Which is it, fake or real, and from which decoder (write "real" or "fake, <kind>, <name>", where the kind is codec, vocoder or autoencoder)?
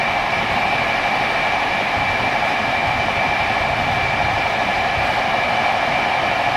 fake, vocoder, BigVGAN v2